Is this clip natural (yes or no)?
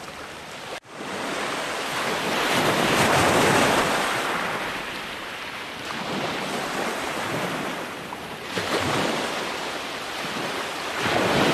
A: no